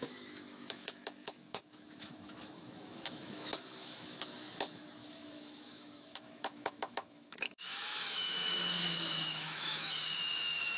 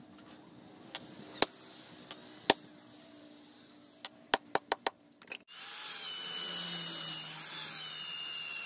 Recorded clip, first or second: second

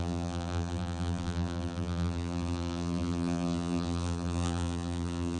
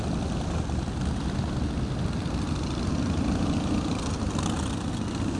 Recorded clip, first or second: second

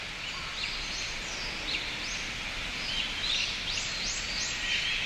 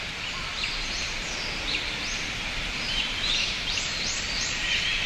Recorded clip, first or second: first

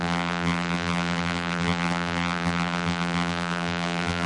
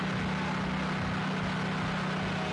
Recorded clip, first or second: second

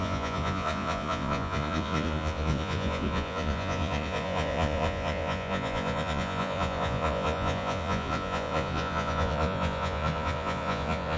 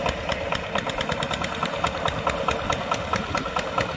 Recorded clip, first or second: second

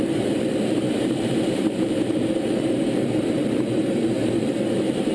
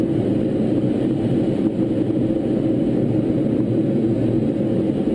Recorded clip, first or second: second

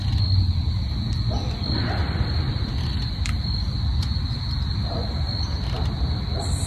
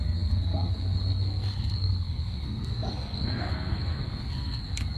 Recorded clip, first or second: first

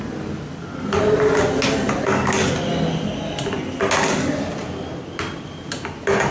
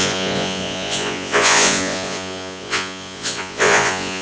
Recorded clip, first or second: first